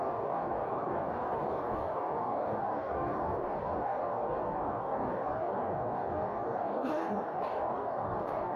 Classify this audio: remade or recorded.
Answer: remade